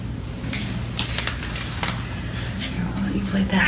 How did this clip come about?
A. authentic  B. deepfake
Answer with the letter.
A